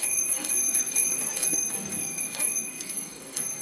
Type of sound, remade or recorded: remade